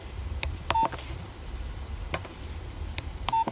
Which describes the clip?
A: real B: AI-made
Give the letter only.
A